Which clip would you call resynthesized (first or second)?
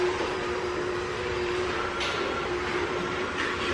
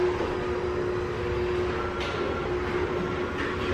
first